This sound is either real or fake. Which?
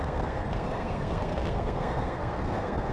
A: fake